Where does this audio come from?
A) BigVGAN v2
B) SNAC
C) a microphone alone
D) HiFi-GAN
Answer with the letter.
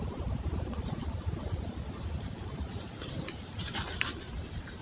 A